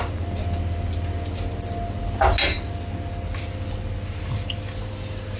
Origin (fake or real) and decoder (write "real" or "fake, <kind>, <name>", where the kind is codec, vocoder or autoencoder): real